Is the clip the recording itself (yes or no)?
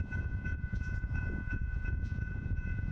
no